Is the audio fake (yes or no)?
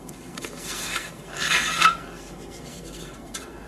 yes